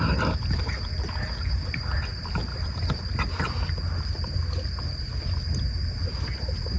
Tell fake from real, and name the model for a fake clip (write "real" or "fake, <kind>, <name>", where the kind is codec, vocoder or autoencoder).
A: real